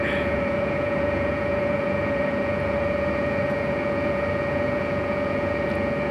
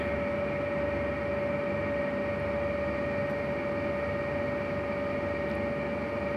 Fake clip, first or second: first